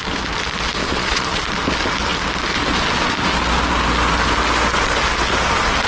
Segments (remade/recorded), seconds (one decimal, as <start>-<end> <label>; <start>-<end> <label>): 0.0-0.8 recorded; 0.8-1.4 remade; 1.4-5.9 recorded